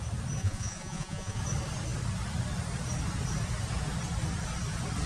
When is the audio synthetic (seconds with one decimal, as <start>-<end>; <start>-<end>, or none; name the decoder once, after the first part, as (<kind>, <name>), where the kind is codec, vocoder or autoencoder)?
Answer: 0.4-1.4 (vocoder, Vocos)